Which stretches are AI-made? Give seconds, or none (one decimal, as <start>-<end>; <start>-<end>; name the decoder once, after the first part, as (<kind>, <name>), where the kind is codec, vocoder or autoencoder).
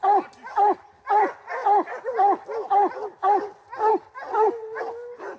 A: none